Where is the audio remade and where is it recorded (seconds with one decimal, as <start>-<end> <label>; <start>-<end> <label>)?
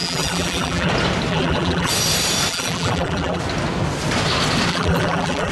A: 0.0-0.9 remade; 0.9-1.3 recorded; 1.3-1.9 remade; 1.9-2.5 recorded; 2.5-3.4 remade; 3.4-4.7 recorded; 4.7-5.5 remade